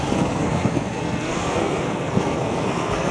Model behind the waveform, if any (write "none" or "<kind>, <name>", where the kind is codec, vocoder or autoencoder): codec, SNAC